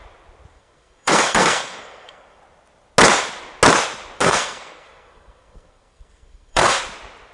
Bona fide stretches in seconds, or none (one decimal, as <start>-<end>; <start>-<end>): 0.0-0.5; 2.4-4.2; 6.8-7.3